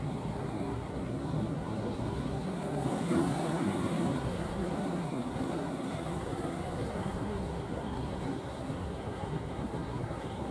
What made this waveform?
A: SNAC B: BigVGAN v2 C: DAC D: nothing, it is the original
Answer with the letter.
A